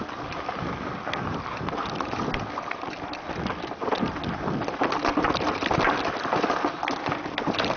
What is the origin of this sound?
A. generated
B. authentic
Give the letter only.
B